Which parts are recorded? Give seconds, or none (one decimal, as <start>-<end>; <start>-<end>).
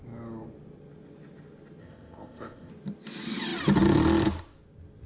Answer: 0.0-1.8; 2.7-5.1